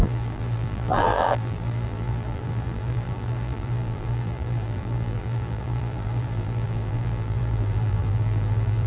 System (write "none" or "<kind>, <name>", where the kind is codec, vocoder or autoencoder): vocoder, BigVGAN v2